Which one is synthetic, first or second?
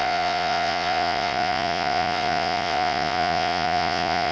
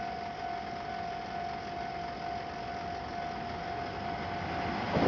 first